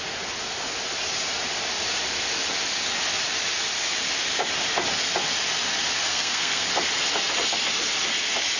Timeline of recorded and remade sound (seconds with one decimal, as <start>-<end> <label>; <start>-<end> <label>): 0.0-6.1 recorded; 6.1-6.7 remade; 6.7-8.6 recorded